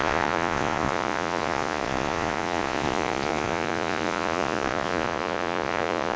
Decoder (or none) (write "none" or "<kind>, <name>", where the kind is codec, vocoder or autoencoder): vocoder, Vocos